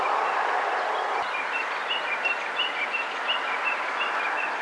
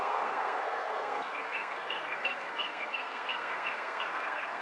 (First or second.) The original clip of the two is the first